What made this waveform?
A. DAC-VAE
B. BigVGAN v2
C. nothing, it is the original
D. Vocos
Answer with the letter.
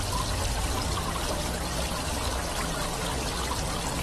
C